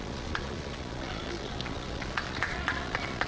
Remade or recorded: remade